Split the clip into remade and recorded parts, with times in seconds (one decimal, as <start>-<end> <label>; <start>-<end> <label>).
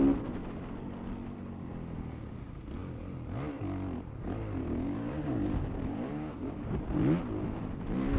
0.0-4.6 recorded; 4.6-6.8 remade; 6.8-8.2 recorded